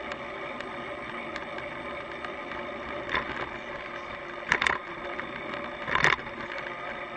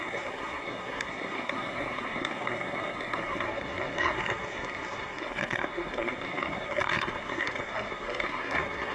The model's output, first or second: second